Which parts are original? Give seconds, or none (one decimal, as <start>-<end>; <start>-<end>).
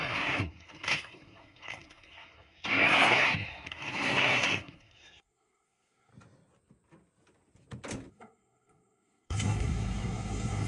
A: 6.1-8.1